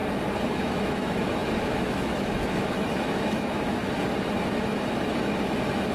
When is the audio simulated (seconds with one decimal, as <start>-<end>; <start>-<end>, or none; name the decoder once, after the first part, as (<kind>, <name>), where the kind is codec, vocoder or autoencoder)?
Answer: 0.5-3.8 (autoencoder, DAC-VAE); 4.4-5.9